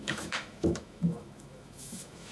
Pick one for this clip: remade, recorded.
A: remade